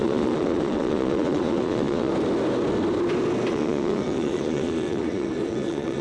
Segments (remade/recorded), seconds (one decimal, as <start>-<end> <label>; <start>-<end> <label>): 0.0-2.1 remade; 2.1-3.5 recorded; 3.5-6.0 remade